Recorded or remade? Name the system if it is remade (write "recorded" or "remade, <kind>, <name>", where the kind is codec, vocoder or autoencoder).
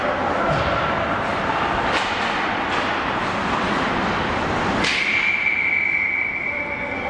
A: recorded